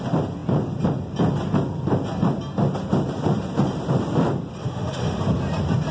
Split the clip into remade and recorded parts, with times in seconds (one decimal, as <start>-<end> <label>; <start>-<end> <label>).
0.0-4.6 recorded; 4.6-5.2 remade; 5.2-5.9 recorded

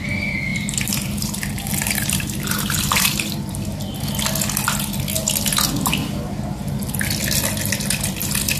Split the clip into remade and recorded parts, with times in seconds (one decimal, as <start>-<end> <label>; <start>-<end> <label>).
0.0-0.5 recorded; 0.5-3.2 remade; 3.2-8.6 recorded

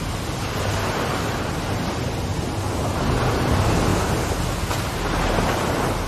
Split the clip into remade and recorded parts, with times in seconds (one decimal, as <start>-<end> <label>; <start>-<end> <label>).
0.0-6.1 recorded

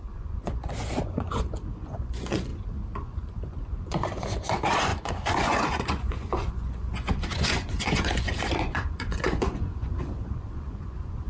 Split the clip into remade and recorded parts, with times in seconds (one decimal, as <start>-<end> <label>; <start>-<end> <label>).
0.0-2.5 remade; 2.5-3.0 recorded; 3.0-11.3 remade

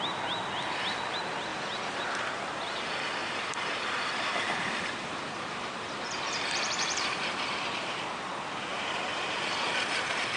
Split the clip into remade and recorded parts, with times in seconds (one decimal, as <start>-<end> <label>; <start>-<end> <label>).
0.0-1.5 recorded; 1.5-2.3 remade; 2.3-3.2 recorded; 3.2-8.1 remade; 8.1-8.7 recorded; 8.7-9.7 remade; 9.7-10.4 recorded

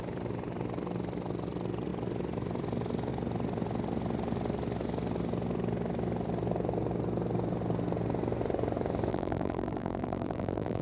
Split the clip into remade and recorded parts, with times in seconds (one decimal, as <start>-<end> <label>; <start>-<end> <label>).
0.0-9.1 recorded; 9.1-10.8 remade

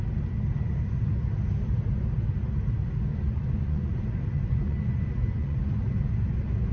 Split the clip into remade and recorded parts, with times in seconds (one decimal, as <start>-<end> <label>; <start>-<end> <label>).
0.0-3.1 recorded; 3.1-3.9 remade; 3.9-4.3 recorded; 4.3-5.6 remade; 5.6-6.7 recorded

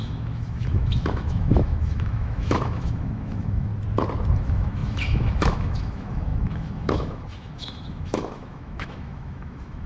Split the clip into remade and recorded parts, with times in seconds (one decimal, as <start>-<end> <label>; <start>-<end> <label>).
0.0-3.7 remade; 3.7-4.3 recorded; 4.3-9.9 remade